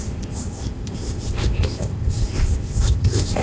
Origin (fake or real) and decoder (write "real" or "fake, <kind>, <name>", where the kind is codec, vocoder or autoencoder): fake, codec, ZipCodec